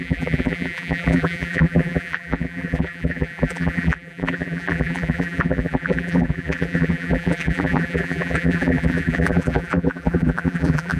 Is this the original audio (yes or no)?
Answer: no